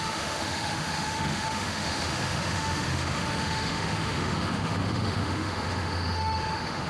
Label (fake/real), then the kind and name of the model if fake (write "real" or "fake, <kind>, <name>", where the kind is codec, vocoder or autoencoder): fake, autoencoder, DAC-VAE